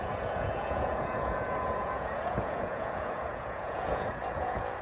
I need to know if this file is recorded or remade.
remade